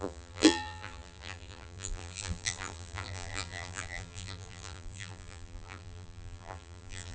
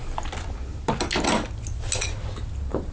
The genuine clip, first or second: second